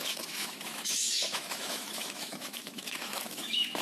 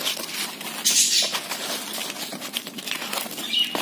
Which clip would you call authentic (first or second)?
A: second